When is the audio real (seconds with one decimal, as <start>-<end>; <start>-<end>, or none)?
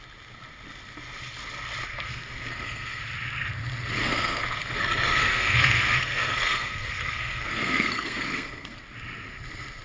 0.0-1.9; 3.0-4.0; 8.8-9.8